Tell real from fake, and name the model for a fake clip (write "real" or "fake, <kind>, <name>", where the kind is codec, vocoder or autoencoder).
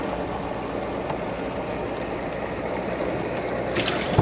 real